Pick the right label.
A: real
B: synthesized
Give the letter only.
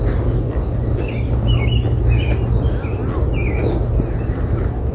A